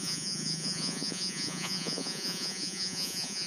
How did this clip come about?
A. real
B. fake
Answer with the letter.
B